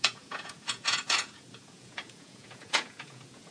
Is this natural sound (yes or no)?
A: no